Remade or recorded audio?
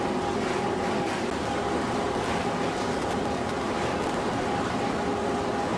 recorded